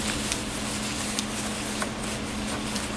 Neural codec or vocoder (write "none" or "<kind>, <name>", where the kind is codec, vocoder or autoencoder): none